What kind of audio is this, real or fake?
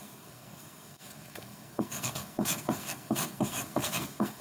fake